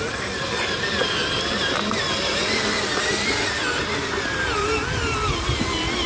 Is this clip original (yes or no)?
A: yes